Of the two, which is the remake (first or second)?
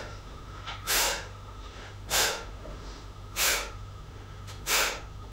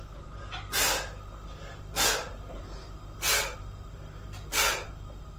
first